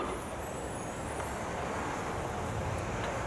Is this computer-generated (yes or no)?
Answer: no